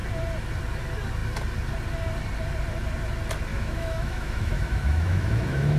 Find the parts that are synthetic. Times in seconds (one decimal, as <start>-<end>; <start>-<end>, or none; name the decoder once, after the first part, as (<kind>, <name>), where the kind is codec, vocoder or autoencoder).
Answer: 3.5-5.8 (autoencoder, DAC-VAE)